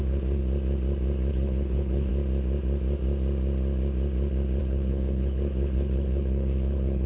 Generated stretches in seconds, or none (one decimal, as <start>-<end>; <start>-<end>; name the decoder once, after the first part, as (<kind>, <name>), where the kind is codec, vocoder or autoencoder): 0.0-0.4 (codec, HILCodec); 1.3-2.1; 4.6-7.1